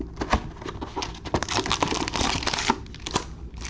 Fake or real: real